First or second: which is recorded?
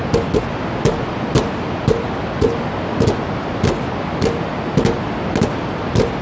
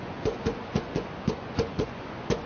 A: first